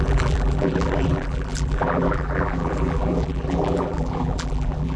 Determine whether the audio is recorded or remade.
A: remade